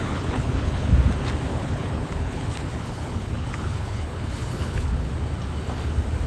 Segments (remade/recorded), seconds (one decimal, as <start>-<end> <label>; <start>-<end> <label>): 0.0-0.9 remade; 0.9-1.5 recorded; 1.5-5.1 remade; 5.1-6.3 recorded